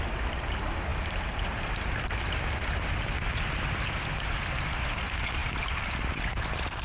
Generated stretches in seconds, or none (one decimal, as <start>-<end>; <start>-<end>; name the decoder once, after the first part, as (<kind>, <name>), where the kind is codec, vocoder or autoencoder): none